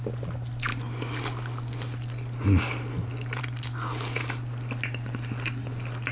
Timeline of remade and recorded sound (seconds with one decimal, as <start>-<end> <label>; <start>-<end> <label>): 0.0-6.1 recorded